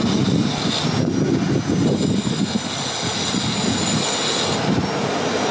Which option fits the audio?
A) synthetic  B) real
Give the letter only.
B